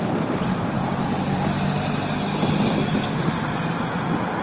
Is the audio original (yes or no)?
yes